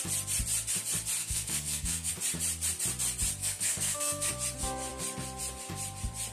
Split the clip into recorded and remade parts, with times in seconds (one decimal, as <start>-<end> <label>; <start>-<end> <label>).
0.0-1.2 recorded; 1.2-2.1 remade; 2.1-3.4 recorded; 3.4-4.3 remade; 4.3-6.3 recorded